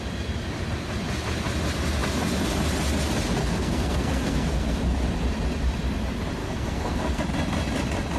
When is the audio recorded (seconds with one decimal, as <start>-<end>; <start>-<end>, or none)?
0.0-3.4; 4.8-6.4; 7.2-8.2